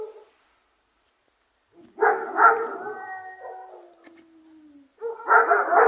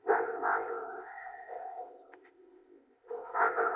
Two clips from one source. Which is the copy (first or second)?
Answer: second